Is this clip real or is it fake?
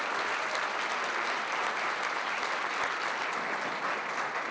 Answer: real